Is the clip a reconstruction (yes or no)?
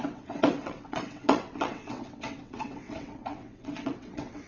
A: yes